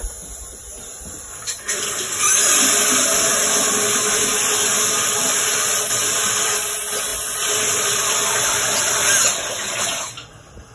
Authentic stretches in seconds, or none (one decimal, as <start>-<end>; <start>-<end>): 0.0-7.1; 10.0-10.7